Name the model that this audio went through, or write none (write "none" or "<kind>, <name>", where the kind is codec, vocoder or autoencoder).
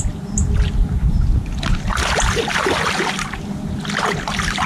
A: none